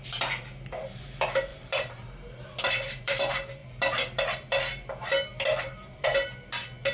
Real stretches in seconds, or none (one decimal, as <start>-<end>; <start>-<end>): 3.6-5.6; 6.1-6.9